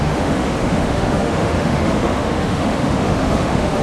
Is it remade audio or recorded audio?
remade